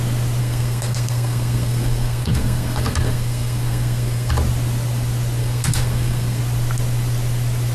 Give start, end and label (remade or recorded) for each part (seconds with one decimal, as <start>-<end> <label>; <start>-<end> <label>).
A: 0.0-0.4 recorded; 0.4-4.3 remade; 4.3-5.4 recorded; 5.4-6.4 remade; 6.4-7.7 recorded